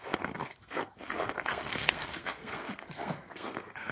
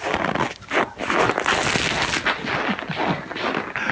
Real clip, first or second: second